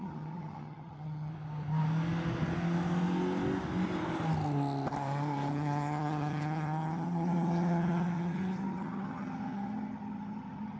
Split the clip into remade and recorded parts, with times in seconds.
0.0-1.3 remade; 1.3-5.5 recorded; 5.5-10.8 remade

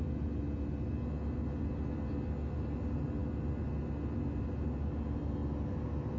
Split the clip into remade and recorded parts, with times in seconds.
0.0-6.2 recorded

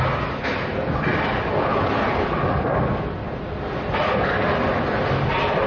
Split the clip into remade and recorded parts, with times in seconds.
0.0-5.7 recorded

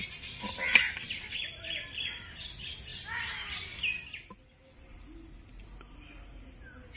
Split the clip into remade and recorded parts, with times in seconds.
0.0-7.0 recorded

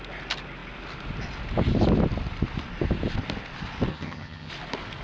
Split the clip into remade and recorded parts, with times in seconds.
0.0-3.9 recorded; 3.9-4.5 remade; 4.5-5.0 recorded